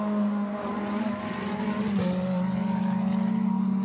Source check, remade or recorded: recorded